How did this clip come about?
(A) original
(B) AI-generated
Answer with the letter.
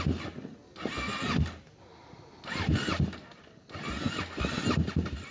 A